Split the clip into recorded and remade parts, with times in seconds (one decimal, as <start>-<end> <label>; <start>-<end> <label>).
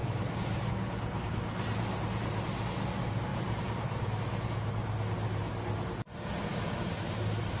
0.0-0.7 remade; 0.7-3.3 recorded; 3.3-4.2 remade; 4.2-7.6 recorded